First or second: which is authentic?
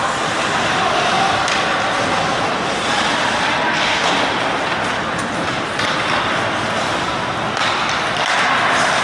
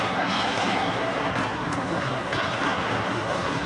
first